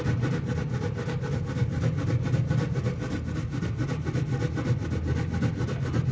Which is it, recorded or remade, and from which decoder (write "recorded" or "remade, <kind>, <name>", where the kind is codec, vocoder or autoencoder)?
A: recorded